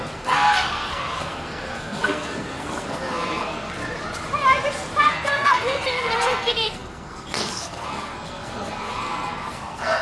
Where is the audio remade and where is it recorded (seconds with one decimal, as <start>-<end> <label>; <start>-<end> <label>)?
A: 0.0-3.8 remade; 3.8-5.0 recorded; 5.0-10.0 remade